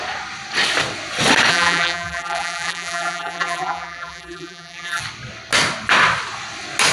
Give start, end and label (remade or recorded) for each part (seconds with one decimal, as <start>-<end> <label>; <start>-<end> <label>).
0.0-1.5 recorded; 1.5-5.0 remade; 5.0-6.9 recorded